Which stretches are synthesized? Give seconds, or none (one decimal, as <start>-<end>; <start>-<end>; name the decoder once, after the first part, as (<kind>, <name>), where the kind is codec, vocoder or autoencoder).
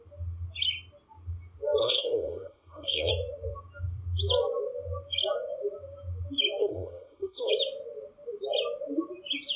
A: 1.8-3.1 (codec, SNAC); 6.6-7.5